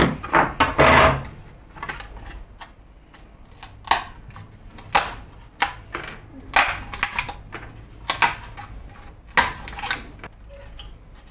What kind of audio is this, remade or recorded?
recorded